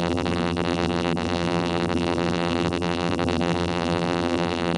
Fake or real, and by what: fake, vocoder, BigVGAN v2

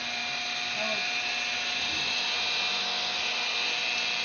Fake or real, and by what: real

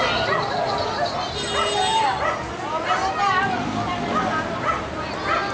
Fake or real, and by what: real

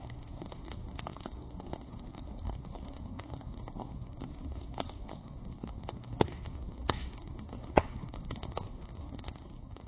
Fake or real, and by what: fake, codec, SNAC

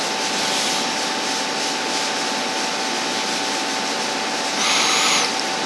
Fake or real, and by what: real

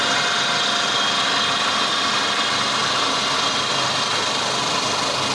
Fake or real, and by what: real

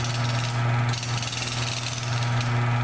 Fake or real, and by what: real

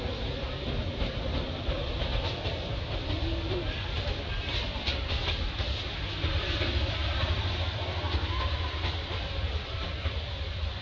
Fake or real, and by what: fake, vocoder, BigVGAN v2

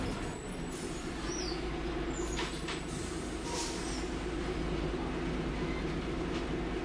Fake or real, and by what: real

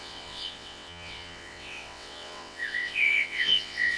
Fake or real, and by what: fake, vocoder, WaveNeXt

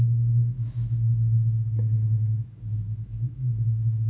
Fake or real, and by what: fake, autoencoder, DAC-VAE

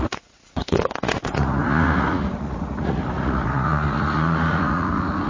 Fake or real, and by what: fake, vocoder, Vocos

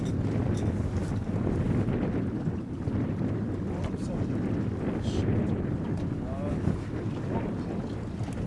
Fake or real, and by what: real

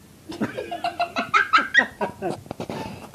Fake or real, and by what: real